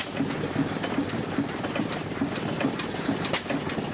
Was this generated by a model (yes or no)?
yes